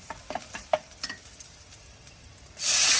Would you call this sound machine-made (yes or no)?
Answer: no